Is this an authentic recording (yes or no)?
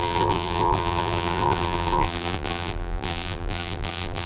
no